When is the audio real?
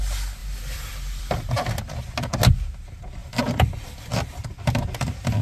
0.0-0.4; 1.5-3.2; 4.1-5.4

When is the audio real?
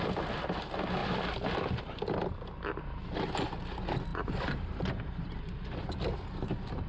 0.0-4.1; 5.4-6.9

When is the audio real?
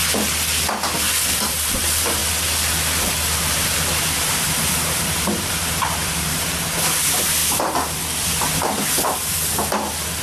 0.0-1.3; 2.2-3.4; 7.4-10.2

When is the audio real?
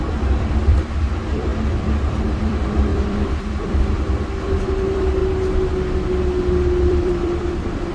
5.2-6.8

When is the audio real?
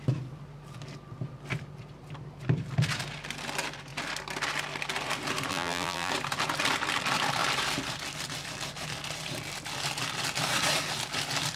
0.0-5.5; 6.1-11.6